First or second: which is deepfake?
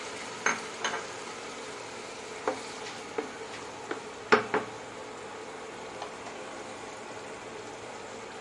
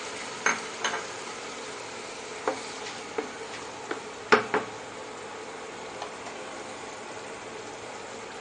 second